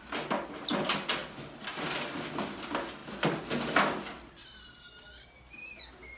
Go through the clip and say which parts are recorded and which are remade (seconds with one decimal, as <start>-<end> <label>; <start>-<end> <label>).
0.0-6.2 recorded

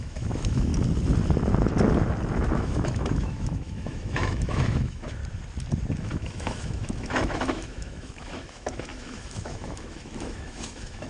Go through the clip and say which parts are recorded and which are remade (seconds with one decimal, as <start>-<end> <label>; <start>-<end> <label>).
0.0-0.7 remade; 0.7-2.4 recorded; 2.4-5.2 remade; 5.2-6.0 recorded; 6.0-11.1 remade

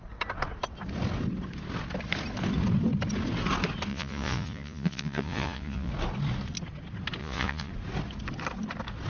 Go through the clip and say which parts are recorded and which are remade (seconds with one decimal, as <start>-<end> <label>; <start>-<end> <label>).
0.0-3.9 recorded; 3.9-5.9 remade; 5.9-7.2 recorded; 7.2-7.7 remade; 7.7-9.1 recorded

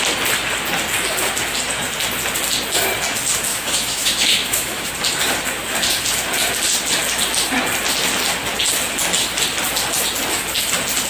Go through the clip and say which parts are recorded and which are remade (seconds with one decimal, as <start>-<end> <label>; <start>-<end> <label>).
0.0-3.5 recorded; 3.5-4.9 remade; 4.9-11.1 recorded

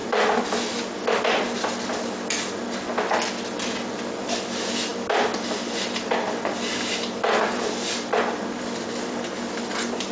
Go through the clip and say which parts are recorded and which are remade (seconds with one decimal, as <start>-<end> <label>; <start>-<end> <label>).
0.0-10.1 recorded